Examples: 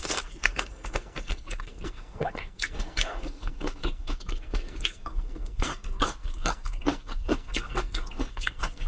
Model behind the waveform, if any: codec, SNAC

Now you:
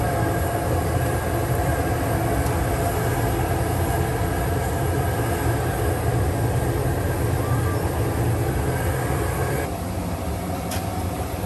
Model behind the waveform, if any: none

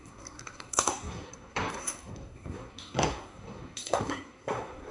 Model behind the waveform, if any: codec, SNAC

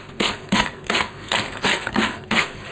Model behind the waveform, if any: codec, SNAC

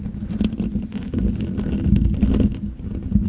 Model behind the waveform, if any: none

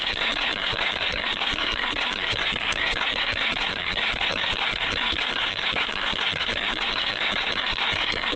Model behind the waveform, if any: codec, SNAC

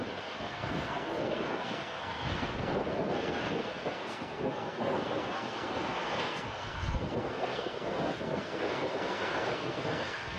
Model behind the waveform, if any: codec, SNAC